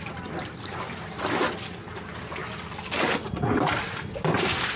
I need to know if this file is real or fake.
real